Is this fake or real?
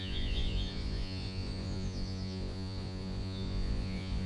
fake